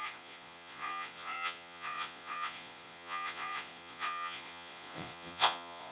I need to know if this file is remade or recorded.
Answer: remade